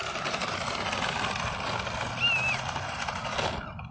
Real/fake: real